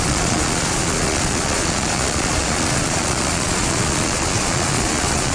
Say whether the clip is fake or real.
fake